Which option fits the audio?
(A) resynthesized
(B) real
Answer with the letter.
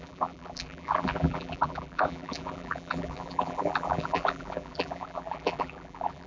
A